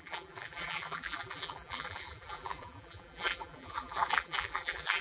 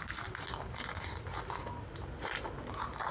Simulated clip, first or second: first